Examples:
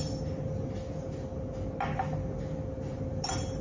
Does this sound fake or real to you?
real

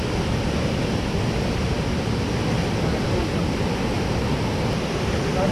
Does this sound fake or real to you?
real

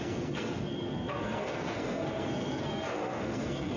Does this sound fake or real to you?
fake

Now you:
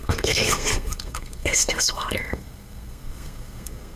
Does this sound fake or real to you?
fake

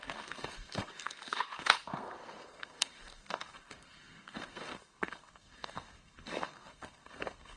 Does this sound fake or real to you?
fake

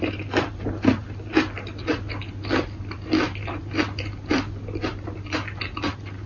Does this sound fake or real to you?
real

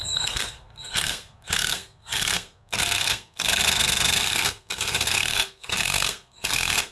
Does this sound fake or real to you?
fake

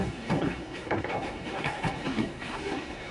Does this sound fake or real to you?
fake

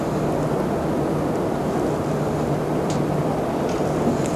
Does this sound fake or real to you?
real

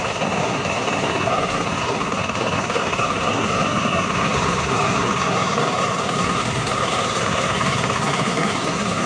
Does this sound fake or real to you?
fake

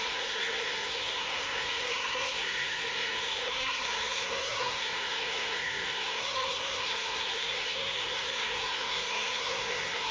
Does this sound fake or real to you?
fake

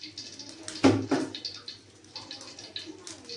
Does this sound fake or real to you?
real